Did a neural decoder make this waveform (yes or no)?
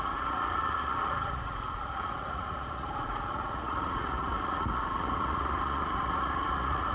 yes